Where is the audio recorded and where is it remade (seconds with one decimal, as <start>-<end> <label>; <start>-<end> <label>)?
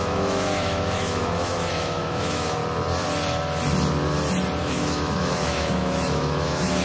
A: 0.0-2.6 remade; 2.6-4.6 recorded; 4.6-6.8 remade